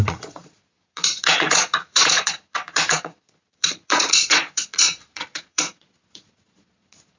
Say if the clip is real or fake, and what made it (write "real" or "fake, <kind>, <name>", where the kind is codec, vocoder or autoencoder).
fake, vocoder, Vocos